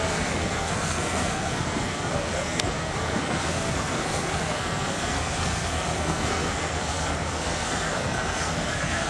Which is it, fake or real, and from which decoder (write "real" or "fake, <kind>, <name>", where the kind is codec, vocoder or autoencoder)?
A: fake, codec, SNAC